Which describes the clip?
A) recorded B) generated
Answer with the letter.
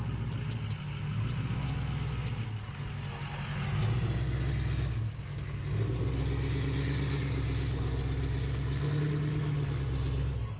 A